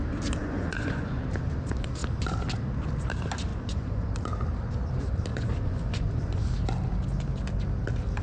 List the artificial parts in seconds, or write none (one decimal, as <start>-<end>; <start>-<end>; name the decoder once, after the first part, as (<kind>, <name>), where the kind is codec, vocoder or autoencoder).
0.4-1.2 (vocoder, Vocos); 3.5-4.1; 5.3-6.5